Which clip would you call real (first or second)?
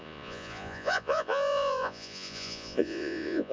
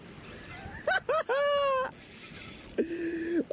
second